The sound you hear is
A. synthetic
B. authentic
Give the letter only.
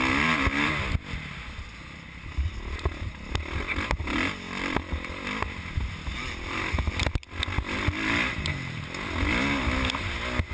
B